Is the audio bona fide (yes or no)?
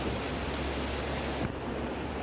yes